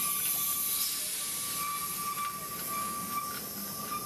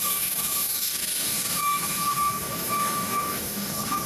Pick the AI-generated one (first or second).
second